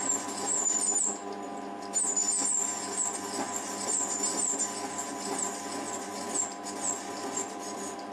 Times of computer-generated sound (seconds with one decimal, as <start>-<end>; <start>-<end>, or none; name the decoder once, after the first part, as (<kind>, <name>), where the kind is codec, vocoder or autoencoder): none